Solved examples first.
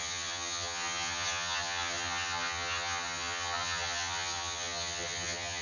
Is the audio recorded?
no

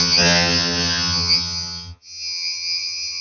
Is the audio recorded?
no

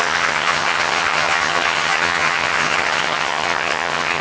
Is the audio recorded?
no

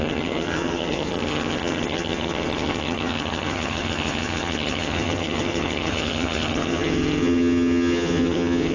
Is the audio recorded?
no